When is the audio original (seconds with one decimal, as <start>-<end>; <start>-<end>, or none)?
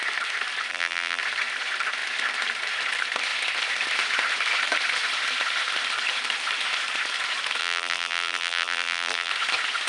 0.0-0.7; 1.2-7.6; 9.3-9.9